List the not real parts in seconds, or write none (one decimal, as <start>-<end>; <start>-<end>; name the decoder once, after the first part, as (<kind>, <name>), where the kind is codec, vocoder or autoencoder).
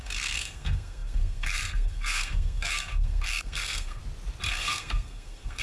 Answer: 0.0-4.0 (codec, SNAC); 4.5-5.6